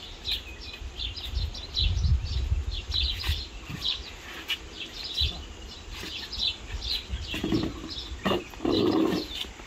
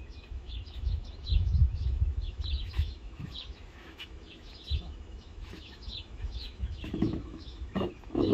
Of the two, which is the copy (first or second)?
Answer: second